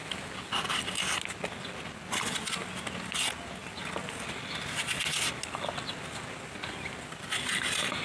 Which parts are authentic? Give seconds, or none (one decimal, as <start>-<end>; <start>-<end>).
0.0-8.0